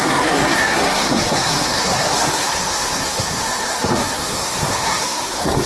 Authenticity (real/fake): fake